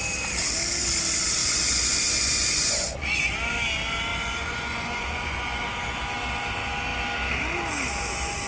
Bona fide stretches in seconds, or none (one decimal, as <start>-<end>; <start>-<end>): 0.0-1.4; 3.2-4.1; 6.0-8.5